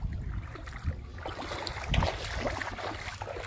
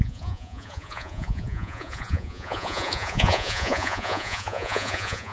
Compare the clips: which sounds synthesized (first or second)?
second